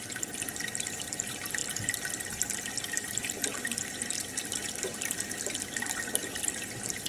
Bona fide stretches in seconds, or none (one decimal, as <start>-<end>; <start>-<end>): 1.6-2.1; 3.4-4.4; 4.9-6.1

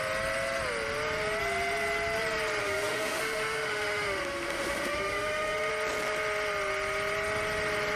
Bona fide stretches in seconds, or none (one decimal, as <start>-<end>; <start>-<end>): 0.0-2.6; 5.7-8.0